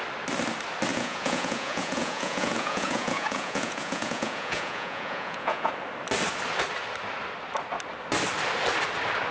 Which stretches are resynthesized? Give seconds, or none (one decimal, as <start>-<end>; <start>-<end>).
0.9-5.7